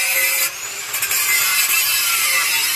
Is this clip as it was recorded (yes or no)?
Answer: no